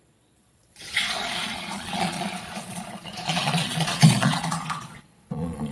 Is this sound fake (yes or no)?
yes